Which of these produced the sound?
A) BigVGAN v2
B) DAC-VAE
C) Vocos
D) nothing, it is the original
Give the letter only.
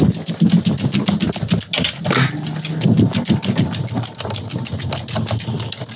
D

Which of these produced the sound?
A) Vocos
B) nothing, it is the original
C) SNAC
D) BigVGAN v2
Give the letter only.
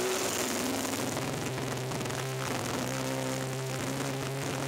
B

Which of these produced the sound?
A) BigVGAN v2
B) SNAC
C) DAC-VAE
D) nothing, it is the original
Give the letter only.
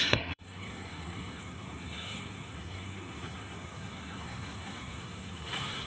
B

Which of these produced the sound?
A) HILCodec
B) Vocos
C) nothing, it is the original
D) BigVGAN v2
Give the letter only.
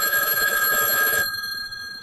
B